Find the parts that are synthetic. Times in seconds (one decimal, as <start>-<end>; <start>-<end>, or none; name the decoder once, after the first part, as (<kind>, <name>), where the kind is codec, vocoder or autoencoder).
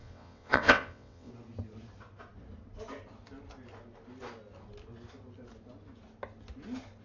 0.0-1.3 (vocoder, WaveNeXt)